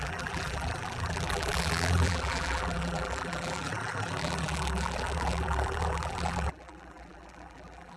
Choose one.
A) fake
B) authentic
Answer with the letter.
A